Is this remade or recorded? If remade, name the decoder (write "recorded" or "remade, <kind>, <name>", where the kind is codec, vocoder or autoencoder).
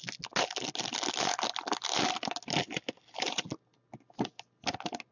recorded